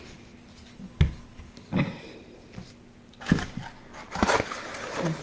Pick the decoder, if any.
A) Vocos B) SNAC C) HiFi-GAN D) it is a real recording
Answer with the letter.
D